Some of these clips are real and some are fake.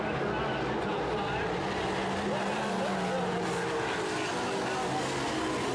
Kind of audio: real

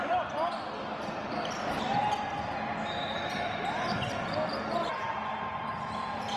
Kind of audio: real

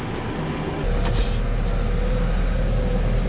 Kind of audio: real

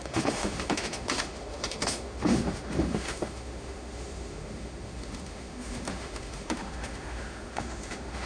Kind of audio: fake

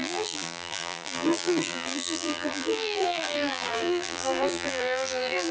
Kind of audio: fake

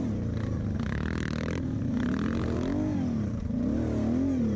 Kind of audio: real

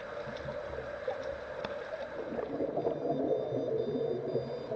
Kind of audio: real